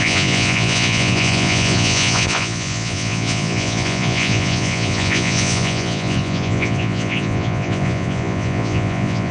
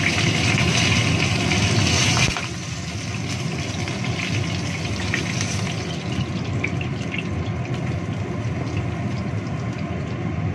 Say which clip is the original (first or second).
second